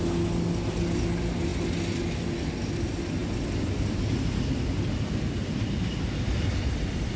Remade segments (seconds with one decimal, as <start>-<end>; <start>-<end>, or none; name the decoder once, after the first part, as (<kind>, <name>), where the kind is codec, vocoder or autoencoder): none